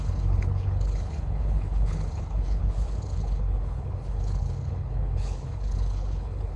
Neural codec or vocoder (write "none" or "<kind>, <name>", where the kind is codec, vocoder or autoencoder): codec, HILCodec